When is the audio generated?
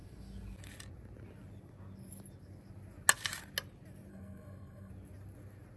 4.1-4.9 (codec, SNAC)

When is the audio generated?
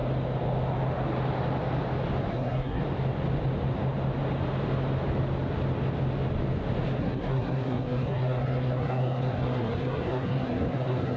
2.3-2.8 (codec, SNAC); 7.0-11.2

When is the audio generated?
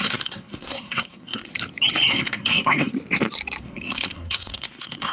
0.0-1.5 (codec, SNAC); 2.1-2.9; 3.6-5.1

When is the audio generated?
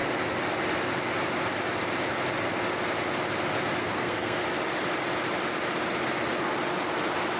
3.8-4.4 (codec, SNAC)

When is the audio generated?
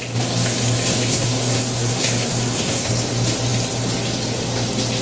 0.9-2.9 (codec, SNAC)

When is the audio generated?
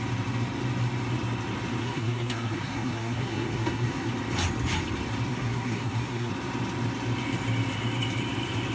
1.8-4.1 (codec, SNAC); 5.3-6.3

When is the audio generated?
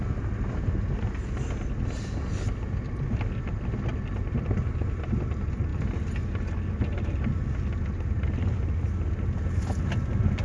none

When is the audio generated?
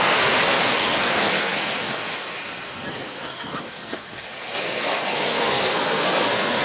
0.0-6.6 (codec, SNAC)